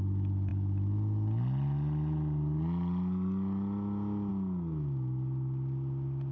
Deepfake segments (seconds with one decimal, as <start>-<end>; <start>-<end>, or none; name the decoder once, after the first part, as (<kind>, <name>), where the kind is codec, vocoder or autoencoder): none